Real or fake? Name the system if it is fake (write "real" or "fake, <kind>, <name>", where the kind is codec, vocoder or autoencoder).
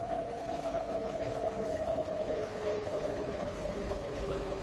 fake, codec, HILCodec